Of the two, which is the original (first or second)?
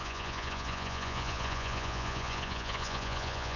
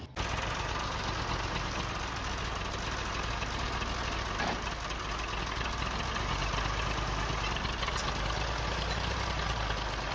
second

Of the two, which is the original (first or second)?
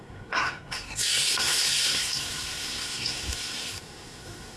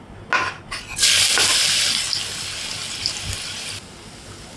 second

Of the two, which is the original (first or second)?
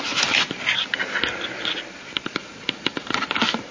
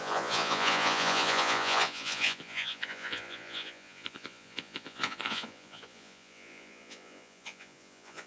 first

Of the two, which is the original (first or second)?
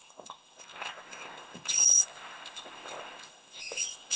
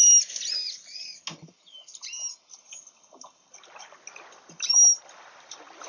second